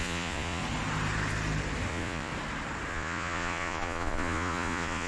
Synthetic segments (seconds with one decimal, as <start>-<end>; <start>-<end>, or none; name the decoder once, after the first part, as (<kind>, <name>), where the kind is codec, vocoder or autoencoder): 0.0-0.6 (vocoder, Vocos); 1.9-2.3; 2.9-5.1